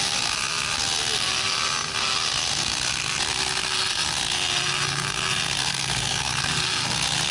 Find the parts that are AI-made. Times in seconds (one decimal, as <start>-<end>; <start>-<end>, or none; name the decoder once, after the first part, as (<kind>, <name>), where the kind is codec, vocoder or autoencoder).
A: 5.6-6.6 (codec, SNAC)